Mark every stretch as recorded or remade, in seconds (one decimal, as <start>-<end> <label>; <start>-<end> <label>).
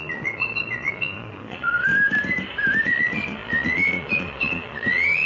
0.0-1.9 remade; 1.9-2.8 recorded; 2.8-5.3 remade